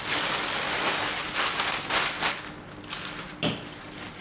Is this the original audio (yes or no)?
yes